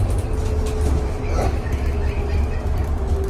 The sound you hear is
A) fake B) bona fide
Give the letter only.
B